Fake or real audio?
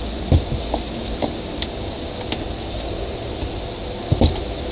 real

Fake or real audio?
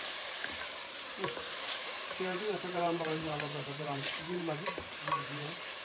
fake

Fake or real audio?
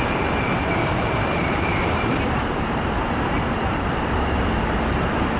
fake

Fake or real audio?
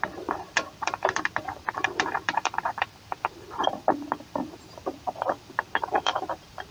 fake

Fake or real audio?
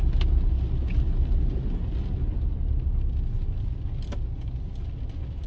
real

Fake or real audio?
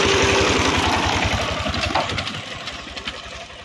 fake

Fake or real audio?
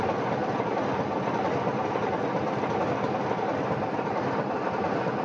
real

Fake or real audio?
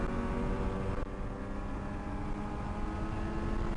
real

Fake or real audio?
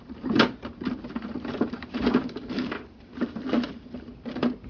fake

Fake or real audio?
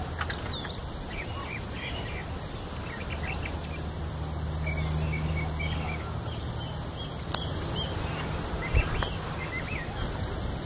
real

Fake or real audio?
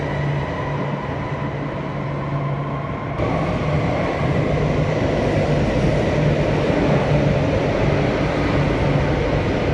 real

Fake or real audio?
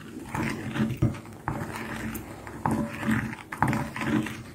real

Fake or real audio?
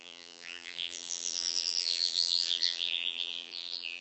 fake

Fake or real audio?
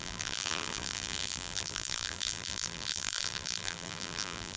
fake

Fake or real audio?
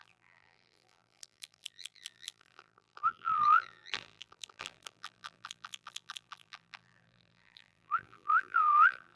fake